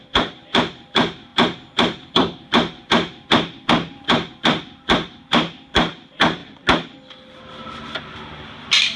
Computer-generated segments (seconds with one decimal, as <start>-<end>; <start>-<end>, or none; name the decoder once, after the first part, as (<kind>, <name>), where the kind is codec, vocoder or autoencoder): 0.0-6.4 (vocoder, BigVGAN v2)